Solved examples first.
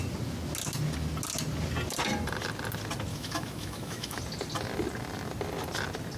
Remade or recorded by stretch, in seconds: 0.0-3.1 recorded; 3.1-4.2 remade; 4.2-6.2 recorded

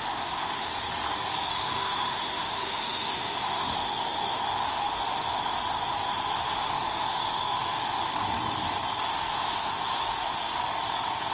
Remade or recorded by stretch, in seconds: 0.0-0.7 remade; 0.7-1.6 recorded; 1.6-8.1 remade; 8.1-9.1 recorded; 9.1-10.6 remade; 10.6-11.3 recorded

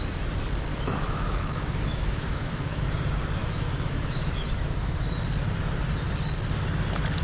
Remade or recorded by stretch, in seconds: 0.0-0.7 recorded; 0.7-2.8 remade; 2.8-3.4 recorded; 3.4-4.9 remade; 4.9-7.2 recorded

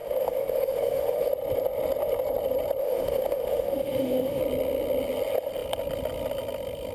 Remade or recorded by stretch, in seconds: 0.0-1.3 remade; 1.3-2.8 recorded; 2.8-4.4 remade; 4.4-6.9 recorded